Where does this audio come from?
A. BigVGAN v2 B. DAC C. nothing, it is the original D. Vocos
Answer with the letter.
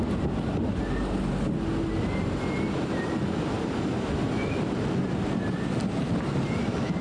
C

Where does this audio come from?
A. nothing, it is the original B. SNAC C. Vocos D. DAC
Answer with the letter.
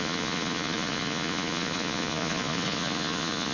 C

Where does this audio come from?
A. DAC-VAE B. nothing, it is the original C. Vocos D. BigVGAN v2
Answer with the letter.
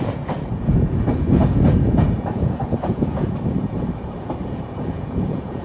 C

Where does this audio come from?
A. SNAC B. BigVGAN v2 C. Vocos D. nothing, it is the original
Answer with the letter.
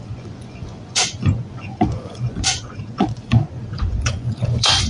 C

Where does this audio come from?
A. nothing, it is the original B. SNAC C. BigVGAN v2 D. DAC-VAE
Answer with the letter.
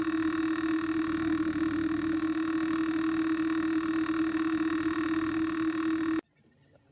A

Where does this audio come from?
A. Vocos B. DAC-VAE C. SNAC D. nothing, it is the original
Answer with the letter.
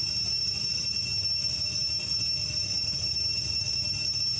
D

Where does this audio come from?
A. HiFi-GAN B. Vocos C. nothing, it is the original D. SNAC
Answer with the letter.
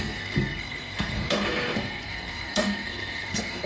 D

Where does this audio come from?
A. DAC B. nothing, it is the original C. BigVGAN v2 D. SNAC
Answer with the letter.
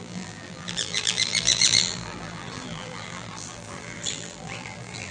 C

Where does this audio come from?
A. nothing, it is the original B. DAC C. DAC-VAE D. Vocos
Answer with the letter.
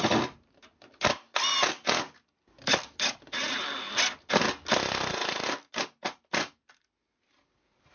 A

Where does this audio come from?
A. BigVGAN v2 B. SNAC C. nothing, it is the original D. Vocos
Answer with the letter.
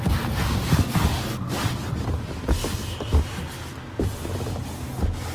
C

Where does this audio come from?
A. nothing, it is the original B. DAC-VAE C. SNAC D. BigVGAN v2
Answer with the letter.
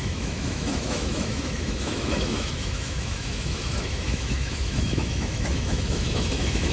B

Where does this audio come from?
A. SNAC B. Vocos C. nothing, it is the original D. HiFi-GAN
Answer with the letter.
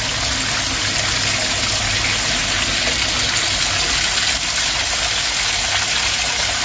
C